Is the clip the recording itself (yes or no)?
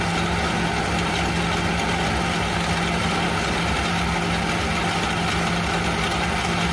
yes